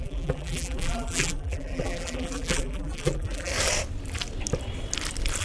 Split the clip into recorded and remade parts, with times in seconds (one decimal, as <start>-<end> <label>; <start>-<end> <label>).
0.0-3.5 remade; 3.5-5.4 recorded